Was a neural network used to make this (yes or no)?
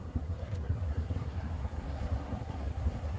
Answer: yes